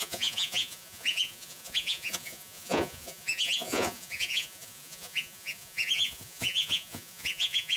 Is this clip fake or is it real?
fake